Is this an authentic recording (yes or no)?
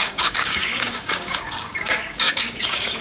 no